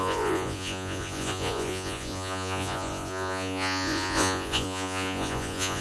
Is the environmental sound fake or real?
fake